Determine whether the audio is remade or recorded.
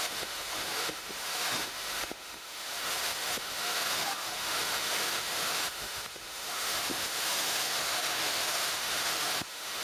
remade